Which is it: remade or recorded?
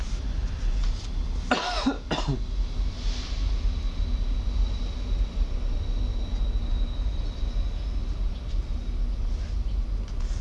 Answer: recorded